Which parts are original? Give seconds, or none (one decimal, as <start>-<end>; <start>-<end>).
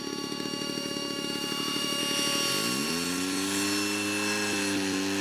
2.0-5.2